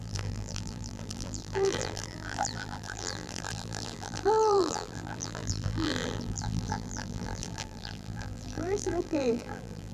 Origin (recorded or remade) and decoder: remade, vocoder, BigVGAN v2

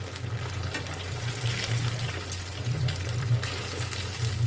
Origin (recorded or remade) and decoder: recorded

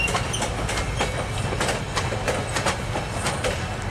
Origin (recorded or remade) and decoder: recorded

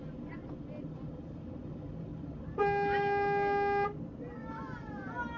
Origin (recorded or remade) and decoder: recorded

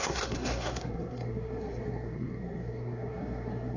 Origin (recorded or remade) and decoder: remade, codec, SNAC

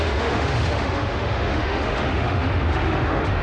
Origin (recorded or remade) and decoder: remade, autoencoder, DAC-VAE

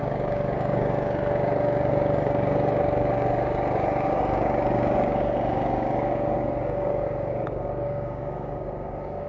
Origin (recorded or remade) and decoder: remade, codec, DAC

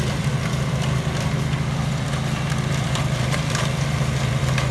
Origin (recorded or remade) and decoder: remade, vocoder, BigVGAN v2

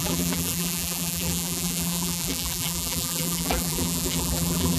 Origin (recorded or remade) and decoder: remade, vocoder, BigVGAN v2